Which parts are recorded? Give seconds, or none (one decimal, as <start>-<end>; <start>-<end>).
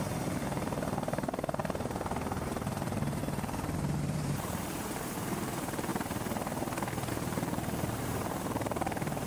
1.6-2.5; 3.2-4.0; 5.9-7.1